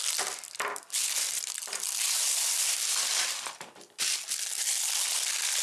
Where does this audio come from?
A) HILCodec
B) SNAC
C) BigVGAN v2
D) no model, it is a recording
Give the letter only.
D